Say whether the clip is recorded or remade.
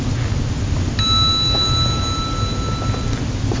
recorded